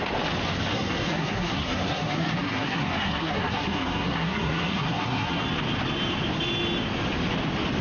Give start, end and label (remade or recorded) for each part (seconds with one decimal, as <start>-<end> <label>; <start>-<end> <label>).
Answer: 0.0-0.7 recorded; 0.7-5.4 remade; 5.4-7.8 recorded